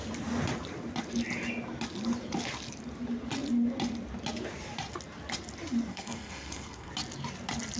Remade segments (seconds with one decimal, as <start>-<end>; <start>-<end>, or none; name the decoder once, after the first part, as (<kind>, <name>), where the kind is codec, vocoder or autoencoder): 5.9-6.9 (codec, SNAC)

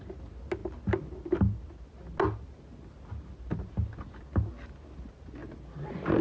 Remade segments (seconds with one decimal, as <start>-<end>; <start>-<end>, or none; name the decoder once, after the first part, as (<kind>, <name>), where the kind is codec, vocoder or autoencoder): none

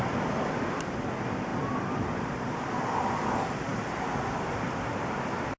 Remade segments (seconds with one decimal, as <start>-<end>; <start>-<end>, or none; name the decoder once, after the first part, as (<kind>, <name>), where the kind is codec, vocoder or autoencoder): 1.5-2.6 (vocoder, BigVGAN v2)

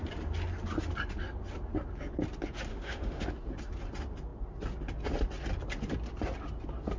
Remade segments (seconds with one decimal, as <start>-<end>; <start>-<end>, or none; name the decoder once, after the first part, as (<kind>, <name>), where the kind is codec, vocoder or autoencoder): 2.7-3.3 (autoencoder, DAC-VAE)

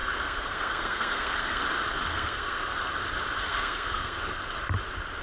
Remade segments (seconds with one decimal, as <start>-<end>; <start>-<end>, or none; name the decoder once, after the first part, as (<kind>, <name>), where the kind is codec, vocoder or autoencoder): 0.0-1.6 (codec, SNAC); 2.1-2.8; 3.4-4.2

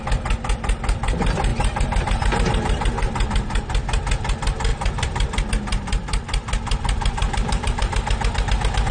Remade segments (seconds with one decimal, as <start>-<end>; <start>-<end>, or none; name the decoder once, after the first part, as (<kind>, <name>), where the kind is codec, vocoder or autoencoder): 4.7-5.5 (vocoder, BigVGAN v2); 7.2-7.9

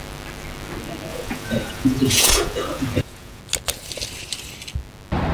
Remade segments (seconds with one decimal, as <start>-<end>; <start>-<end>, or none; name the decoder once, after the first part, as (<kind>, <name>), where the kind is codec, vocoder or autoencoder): 1.1-3.4 (vocoder, Vocos)

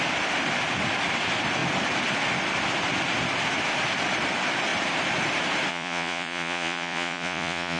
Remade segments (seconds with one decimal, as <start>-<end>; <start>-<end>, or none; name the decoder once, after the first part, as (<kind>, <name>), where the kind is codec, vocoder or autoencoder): 5.7-7.8 (vocoder, Vocos)